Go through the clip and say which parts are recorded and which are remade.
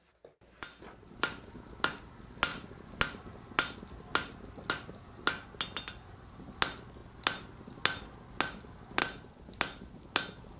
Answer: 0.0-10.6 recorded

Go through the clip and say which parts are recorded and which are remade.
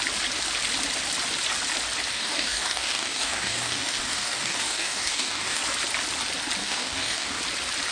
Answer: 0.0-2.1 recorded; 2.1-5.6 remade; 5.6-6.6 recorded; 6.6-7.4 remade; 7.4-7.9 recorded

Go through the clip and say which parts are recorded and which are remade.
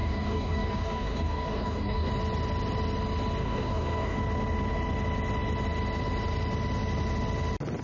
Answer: 0.0-2.1 remade; 2.1-3.4 recorded; 3.4-4.2 remade; 4.2-7.8 recorded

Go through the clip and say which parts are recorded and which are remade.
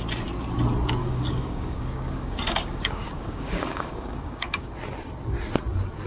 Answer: 0.0-1.0 recorded; 1.0-4.7 remade; 4.7-6.1 recorded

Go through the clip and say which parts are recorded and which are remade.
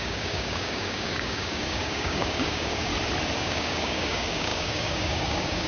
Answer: 0.0-2.9 remade; 2.9-3.4 recorded; 3.4-5.7 remade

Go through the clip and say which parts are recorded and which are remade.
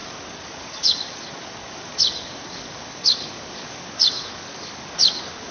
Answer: 0.0-5.5 remade